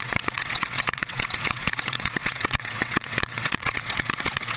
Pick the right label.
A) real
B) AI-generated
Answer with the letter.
B